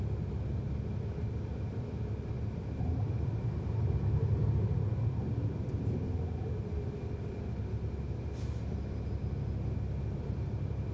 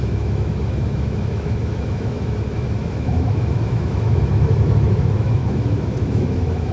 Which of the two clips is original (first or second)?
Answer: first